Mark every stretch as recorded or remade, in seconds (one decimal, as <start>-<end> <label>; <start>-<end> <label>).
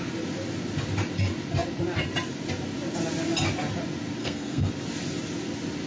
0.0-4.2 recorded; 4.2-4.7 remade; 4.7-5.9 recorded